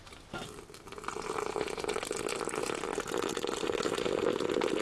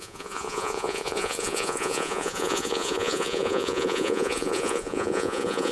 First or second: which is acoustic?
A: first